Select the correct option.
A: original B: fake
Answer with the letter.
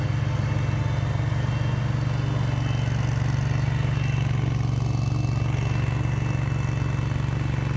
A